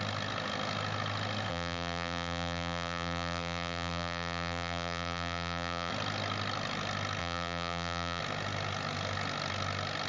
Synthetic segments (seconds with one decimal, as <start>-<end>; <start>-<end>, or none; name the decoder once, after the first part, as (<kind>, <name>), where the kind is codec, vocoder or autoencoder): 1.5-5.9 (vocoder, BigVGAN v2); 7.2-8.2